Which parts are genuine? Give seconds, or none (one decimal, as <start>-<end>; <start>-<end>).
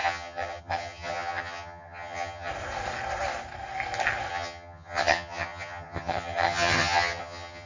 2.5-4.3